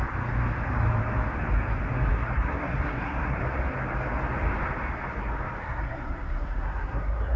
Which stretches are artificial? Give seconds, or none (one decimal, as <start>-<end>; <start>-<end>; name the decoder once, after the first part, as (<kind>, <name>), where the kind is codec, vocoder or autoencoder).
2.1-3.4 (codec, SNAC); 5.6-7.4